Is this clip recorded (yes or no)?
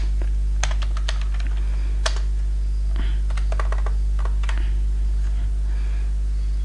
yes